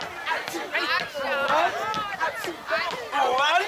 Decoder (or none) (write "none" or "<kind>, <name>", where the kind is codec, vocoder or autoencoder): none